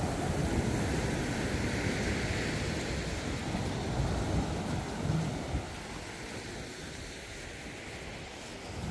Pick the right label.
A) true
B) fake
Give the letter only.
A